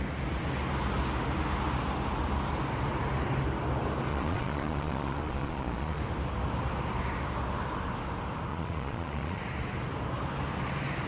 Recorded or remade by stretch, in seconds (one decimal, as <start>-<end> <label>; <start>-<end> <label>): 0.0-4.1 recorded; 4.1-6.0 remade; 6.0-8.5 recorded; 8.5-9.4 remade; 9.4-11.1 recorded